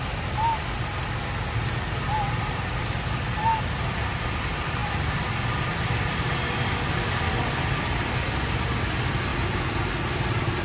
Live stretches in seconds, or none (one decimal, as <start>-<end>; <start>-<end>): 0.0-9.3; 9.9-10.6